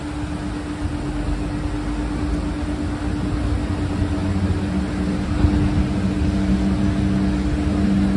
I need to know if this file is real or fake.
real